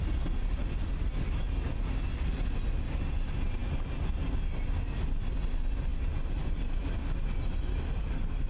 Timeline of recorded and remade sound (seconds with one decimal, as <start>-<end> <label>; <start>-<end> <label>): 0.0-8.5 recorded